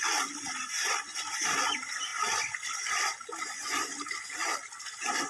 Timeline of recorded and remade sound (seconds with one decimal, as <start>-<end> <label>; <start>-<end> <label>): 0.0-5.3 recorded